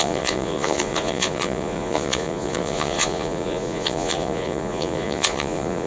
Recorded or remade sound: remade